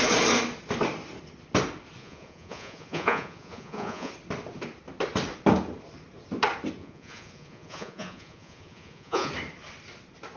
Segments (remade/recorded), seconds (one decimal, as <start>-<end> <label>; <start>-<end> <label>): 0.0-2.0 recorded; 2.0-4.1 remade; 4.1-6.8 recorded; 6.8-9.3 remade; 9.3-10.4 recorded

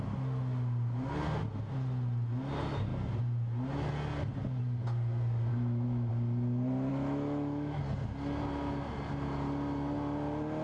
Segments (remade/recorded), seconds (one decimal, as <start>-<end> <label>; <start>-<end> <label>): 0.0-5.5 recorded; 5.5-6.1 remade; 6.1-6.9 recorded; 6.9-7.8 remade; 7.8-10.6 recorded

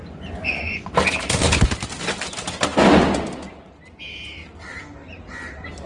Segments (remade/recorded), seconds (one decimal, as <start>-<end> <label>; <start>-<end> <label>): 0.0-0.9 remade; 0.9-5.9 recorded

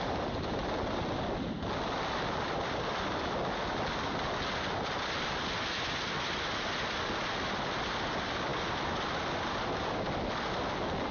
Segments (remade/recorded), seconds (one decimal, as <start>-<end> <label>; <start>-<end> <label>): 0.0-11.1 recorded

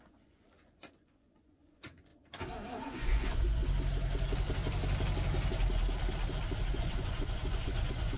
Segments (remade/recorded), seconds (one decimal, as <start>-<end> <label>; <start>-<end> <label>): 0.0-2.1 remade; 2.1-2.8 recorded; 2.8-3.6 remade; 3.6-6.7 recorded; 6.7-8.2 remade

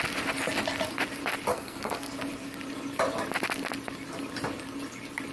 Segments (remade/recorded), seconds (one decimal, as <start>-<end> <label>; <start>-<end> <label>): 0.0-1.5 recorded; 1.5-2.1 remade; 2.1-5.3 recorded

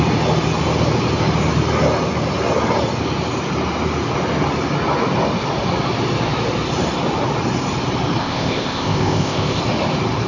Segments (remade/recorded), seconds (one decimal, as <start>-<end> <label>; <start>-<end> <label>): 0.0-8.2 recorded; 8.2-9.6 remade; 9.6-10.3 recorded